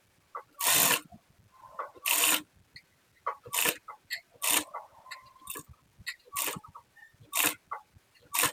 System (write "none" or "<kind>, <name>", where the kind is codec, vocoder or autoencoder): none